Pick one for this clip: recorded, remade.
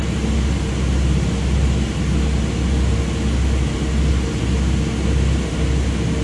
recorded